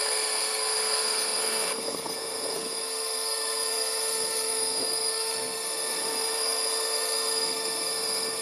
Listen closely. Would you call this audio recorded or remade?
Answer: remade